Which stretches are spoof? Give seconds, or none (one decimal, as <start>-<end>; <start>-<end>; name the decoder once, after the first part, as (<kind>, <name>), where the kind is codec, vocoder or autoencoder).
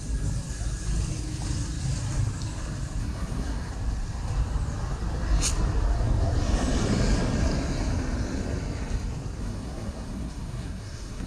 3.0-3.7 (codec, SNAC); 9.4-11.3